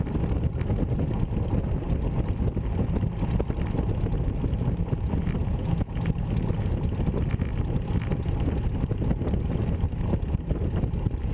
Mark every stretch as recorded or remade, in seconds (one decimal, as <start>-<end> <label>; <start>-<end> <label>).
0.0-5.4 recorded; 5.4-6.0 remade; 6.0-11.3 recorded